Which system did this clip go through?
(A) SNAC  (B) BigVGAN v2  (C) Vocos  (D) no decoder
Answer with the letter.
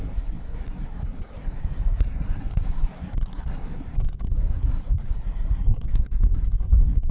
A